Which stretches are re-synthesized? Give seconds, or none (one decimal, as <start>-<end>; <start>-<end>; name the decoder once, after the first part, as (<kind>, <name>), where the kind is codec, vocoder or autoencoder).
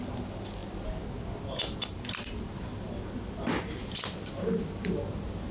none